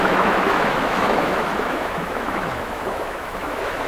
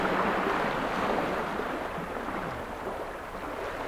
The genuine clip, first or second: second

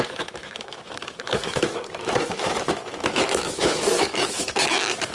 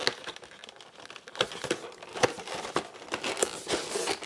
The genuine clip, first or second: second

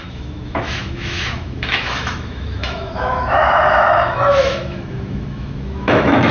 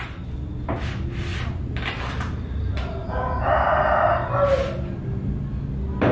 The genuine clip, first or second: second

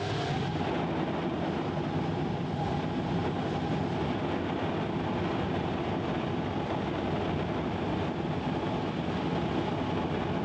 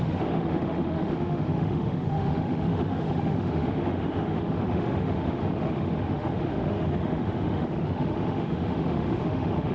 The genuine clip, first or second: first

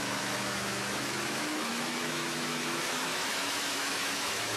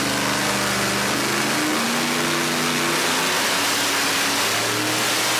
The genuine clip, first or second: second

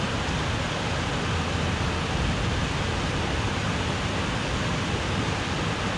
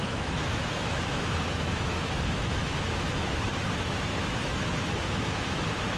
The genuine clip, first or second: first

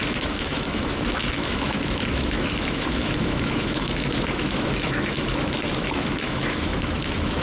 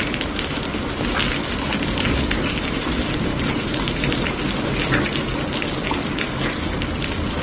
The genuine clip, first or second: second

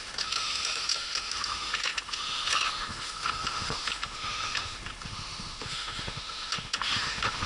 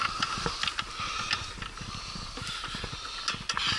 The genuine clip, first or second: second